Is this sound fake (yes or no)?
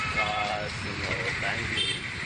yes